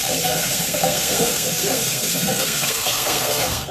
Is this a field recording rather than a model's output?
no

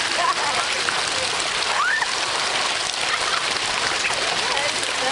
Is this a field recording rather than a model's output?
yes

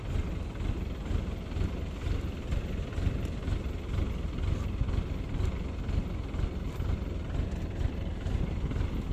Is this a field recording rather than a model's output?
yes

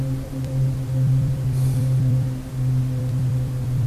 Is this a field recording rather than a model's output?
no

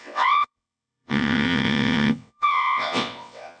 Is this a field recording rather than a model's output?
no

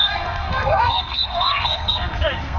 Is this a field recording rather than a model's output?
no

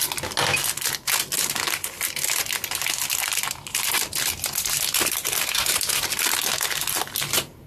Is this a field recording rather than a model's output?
yes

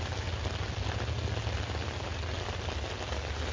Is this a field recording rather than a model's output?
yes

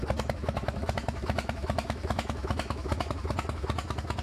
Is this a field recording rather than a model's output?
no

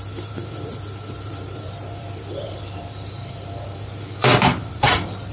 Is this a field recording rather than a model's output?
no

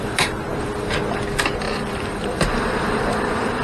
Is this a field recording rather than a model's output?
no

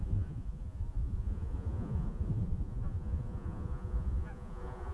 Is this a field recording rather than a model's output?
no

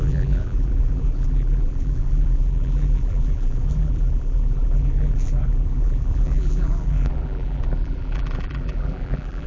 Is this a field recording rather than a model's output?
no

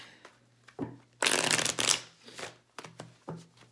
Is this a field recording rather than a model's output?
yes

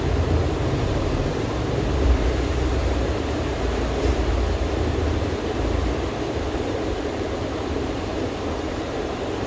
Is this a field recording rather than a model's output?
no